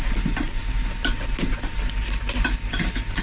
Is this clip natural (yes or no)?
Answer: yes